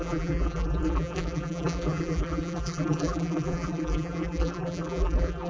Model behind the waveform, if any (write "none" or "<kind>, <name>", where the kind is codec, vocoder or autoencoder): vocoder, BigVGAN v2